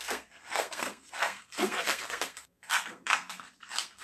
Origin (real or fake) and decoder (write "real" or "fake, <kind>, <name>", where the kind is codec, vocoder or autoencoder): fake, codec, SNAC